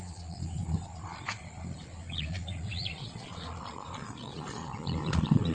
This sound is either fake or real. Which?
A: fake